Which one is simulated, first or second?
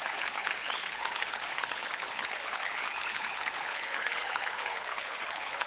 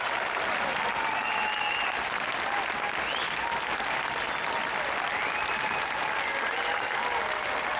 first